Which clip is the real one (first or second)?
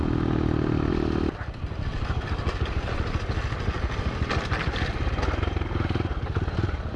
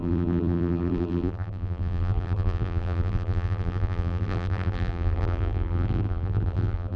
first